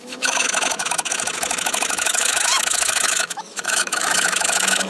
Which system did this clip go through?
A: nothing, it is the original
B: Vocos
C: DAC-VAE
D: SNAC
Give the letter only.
C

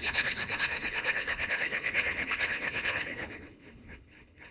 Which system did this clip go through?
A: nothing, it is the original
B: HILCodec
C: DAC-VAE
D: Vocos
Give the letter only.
B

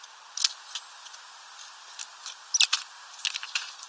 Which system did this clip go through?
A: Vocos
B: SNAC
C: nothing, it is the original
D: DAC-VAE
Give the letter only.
C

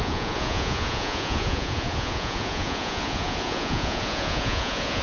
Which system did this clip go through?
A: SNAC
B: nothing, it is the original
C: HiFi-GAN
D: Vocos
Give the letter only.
D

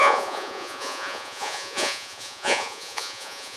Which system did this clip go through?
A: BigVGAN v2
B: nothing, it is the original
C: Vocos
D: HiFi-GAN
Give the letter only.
C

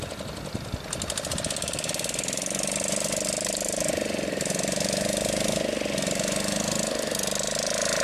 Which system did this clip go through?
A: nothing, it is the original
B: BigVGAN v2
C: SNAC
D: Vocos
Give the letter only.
A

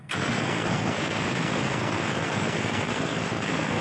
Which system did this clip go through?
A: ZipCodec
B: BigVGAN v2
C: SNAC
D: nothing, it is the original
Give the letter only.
C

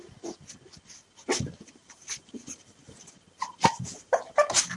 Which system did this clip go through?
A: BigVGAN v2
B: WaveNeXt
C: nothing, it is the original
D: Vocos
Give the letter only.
C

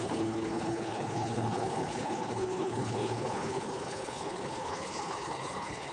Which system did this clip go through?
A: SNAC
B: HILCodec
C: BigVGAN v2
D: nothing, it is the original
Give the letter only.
B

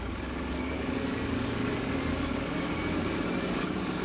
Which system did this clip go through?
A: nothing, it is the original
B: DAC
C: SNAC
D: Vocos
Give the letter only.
B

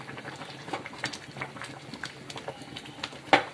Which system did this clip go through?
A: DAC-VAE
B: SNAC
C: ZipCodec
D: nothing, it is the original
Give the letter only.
D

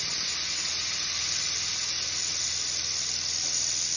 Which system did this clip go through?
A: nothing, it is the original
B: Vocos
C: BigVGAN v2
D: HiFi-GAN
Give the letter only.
A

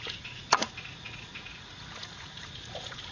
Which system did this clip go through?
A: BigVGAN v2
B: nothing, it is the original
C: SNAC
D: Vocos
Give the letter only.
D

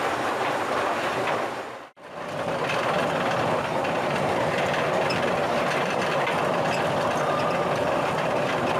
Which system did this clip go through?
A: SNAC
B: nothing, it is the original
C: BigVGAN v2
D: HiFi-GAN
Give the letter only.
B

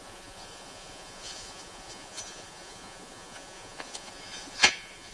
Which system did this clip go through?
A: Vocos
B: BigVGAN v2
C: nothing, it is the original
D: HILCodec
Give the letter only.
A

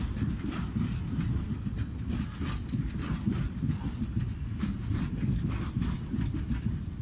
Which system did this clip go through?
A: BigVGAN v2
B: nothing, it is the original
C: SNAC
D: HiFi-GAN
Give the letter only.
B